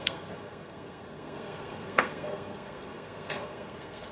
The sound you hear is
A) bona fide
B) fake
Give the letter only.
B